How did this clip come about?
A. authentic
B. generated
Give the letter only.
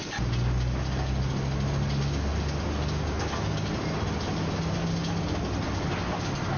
A